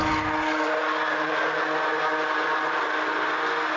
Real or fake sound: real